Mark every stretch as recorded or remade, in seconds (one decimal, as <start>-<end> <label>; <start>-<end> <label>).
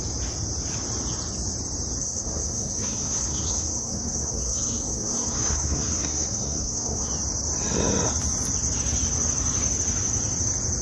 0.0-2.0 recorded; 2.0-7.1 remade; 7.1-10.8 recorded